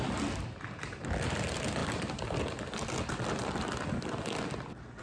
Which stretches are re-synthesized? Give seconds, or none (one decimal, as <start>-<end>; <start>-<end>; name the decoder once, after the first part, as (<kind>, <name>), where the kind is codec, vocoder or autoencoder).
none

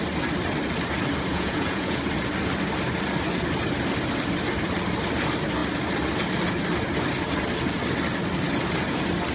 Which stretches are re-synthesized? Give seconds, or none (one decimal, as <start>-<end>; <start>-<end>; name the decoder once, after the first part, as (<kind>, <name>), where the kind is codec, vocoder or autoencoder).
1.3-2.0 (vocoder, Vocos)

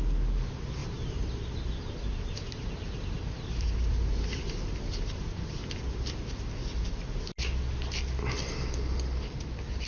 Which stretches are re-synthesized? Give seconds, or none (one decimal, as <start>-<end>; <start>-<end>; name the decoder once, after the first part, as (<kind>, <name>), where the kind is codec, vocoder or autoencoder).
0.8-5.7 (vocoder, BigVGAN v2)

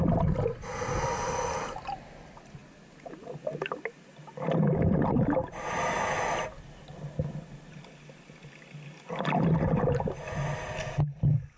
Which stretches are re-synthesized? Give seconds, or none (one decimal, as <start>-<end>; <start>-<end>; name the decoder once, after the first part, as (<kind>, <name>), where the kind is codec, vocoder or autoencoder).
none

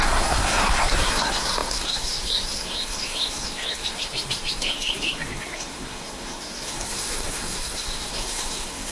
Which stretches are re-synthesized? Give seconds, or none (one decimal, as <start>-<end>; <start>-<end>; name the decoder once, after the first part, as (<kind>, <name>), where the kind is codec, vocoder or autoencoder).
0.0-8.9 (codec, SNAC)

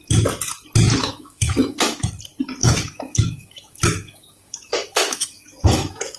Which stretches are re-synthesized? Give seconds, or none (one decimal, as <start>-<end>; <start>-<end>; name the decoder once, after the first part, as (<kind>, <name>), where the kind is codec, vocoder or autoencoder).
1.0-2.1 (autoencoder, DAC-VAE); 2.6-6.2

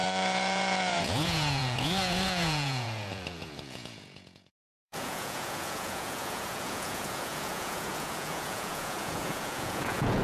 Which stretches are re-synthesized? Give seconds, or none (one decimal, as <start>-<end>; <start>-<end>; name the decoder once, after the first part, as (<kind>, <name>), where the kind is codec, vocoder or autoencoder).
0.0-10.2 (vocoder, Vocos)